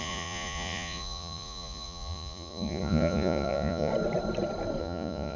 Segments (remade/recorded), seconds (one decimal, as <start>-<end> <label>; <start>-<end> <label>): 0.0-3.9 remade; 3.9-4.8 recorded; 4.8-5.4 remade